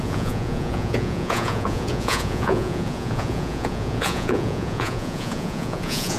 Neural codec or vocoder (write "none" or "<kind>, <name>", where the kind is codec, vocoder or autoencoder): vocoder, Vocos